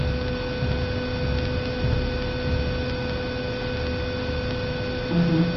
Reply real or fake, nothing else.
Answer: real